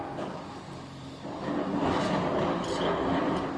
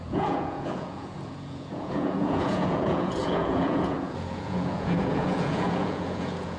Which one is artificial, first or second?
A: second